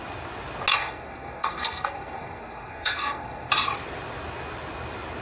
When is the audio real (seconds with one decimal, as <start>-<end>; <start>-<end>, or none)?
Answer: 0.0-0.7; 3.5-5.2